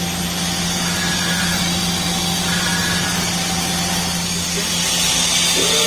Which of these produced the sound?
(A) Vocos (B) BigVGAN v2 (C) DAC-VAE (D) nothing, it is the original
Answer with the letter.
D